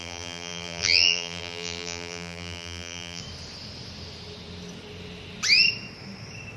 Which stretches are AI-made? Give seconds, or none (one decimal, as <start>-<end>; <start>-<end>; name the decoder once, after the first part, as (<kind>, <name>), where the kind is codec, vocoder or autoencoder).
0.0-3.2 (vocoder, BigVGAN v2)